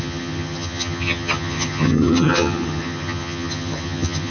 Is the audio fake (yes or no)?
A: yes